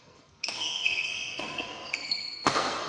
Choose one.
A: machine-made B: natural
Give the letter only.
A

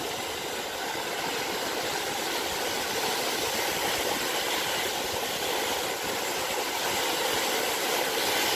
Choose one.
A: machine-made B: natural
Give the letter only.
B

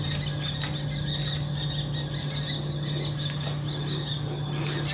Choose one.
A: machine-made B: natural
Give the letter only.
B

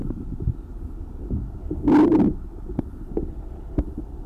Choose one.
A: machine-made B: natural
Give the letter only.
B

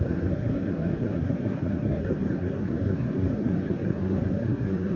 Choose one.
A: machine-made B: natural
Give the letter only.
A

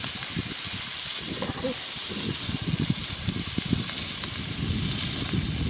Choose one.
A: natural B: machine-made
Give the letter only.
A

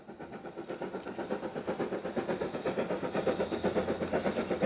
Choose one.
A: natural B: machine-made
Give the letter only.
A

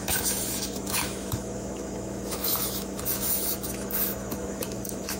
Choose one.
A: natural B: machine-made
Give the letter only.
B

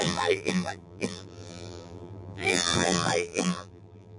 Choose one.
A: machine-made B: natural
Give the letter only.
A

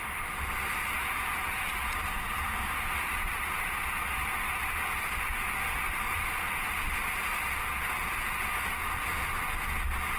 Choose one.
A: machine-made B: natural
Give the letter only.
B